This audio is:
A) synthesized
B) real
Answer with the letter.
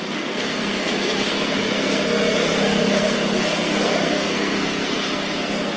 A